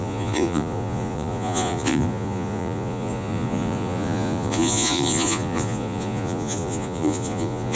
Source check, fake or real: fake